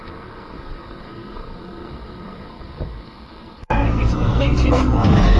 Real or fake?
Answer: fake